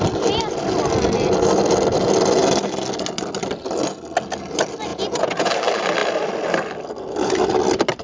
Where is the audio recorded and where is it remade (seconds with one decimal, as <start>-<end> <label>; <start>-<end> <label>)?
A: 0.0-4.9 recorded; 4.9-5.5 remade; 5.5-8.0 recorded